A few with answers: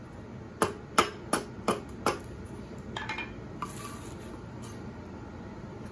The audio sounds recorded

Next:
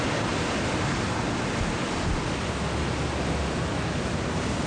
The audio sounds recorded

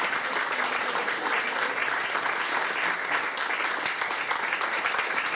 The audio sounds recorded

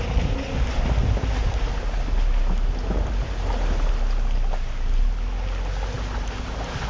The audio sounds recorded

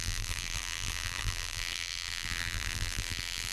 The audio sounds remade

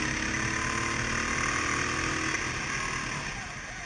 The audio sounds recorded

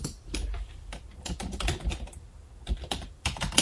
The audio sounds remade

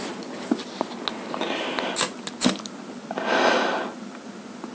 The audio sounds recorded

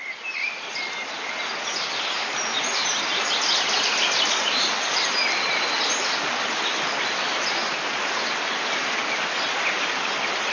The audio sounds remade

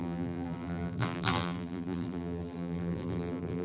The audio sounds remade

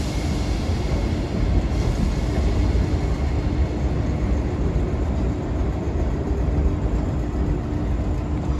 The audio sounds recorded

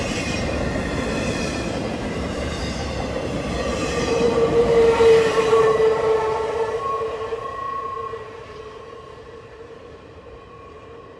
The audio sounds remade